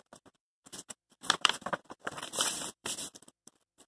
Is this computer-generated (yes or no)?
yes